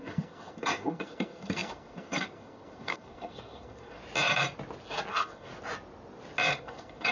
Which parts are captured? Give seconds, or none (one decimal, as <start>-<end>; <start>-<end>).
4.0-5.1; 5.5-6.5